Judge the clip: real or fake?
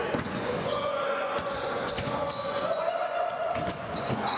fake